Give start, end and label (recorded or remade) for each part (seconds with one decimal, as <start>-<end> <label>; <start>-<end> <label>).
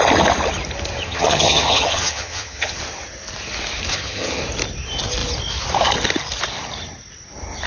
0.0-1.0 recorded; 1.0-2.8 remade; 2.8-3.9 recorded; 3.9-4.4 remade; 4.4-7.7 recorded